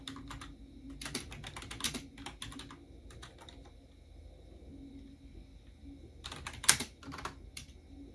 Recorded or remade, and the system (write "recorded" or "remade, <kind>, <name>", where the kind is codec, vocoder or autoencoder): recorded